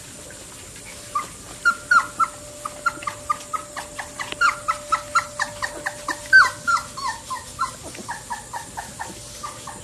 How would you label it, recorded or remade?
recorded